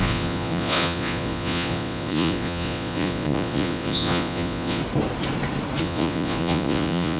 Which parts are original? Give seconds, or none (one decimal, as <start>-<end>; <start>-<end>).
4.8-5.8